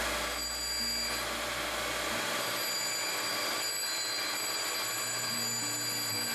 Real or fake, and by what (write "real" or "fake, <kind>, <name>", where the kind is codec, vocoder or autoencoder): real